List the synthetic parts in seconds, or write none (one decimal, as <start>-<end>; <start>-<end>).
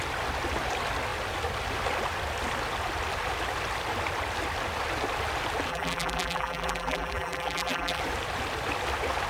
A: 5.7-8.0